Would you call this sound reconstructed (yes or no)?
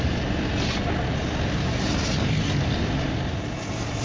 no